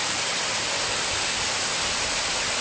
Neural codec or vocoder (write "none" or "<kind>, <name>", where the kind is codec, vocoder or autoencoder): none